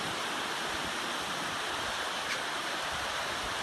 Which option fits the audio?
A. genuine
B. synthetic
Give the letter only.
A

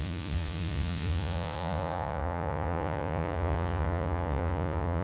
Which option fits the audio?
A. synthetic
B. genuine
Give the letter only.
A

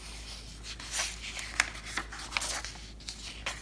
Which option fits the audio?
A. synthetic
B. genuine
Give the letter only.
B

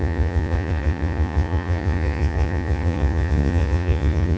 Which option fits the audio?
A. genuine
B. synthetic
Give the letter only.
B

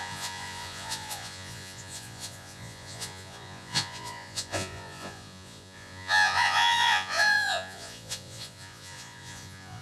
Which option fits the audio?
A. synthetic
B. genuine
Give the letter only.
A